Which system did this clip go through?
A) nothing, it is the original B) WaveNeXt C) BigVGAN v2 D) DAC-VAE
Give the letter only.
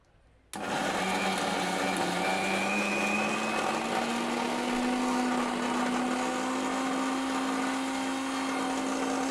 A